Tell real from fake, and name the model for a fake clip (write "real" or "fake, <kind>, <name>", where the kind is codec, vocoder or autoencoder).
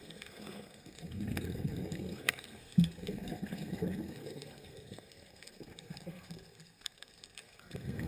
fake, codec, SNAC